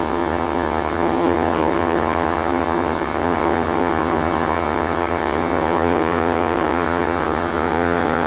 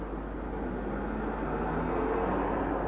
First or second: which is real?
second